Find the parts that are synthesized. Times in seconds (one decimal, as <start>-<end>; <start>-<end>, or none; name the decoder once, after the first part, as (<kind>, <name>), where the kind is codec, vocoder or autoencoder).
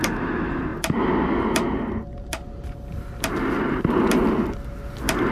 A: none